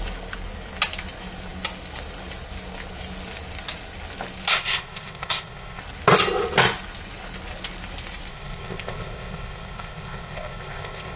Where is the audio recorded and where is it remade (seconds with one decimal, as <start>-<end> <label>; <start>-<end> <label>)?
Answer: 0.0-4.5 recorded; 4.5-5.8 remade; 5.8-8.3 recorded; 8.3-11.2 remade